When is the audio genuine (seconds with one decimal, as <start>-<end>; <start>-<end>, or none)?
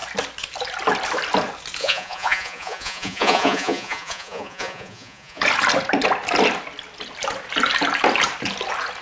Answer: 0.0-1.8; 5.4-9.0